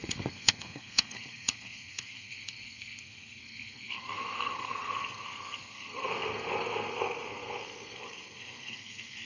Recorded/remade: remade